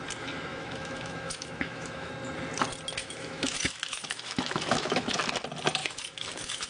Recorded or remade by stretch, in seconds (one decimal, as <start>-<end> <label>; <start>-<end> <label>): 0.0-0.5 recorded; 0.5-2.1 remade; 2.1-3.0 recorded; 3.0-5.2 remade; 5.2-5.8 recorded; 5.8-6.7 remade